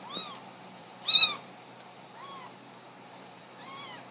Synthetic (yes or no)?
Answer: yes